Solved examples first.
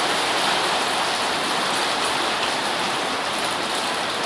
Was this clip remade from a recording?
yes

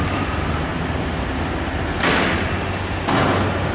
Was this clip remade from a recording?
no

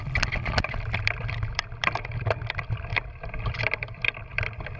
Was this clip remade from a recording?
yes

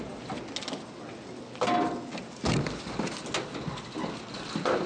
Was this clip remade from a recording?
no